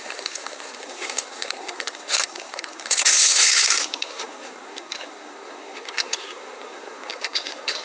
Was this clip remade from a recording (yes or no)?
yes